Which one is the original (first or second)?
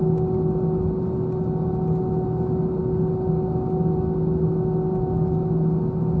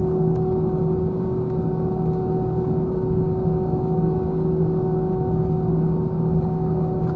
first